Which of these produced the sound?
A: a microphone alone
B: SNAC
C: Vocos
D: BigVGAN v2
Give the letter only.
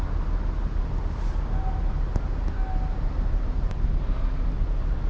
A